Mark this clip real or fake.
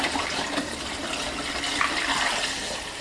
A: real